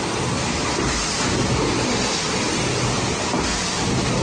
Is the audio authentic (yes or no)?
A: yes